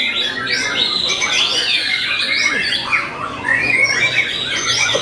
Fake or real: fake